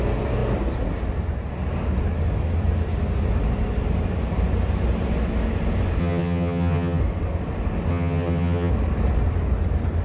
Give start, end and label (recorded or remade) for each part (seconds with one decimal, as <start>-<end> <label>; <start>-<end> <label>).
0.0-6.0 recorded; 6.0-7.0 remade; 7.0-7.9 recorded; 7.9-8.7 remade; 8.7-10.0 recorded